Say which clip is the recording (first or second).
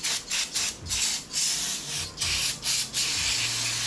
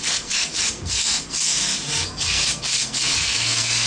first